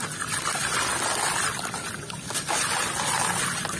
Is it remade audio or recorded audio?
recorded